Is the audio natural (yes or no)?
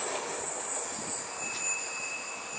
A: no